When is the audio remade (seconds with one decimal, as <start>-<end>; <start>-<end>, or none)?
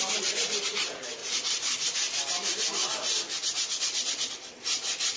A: none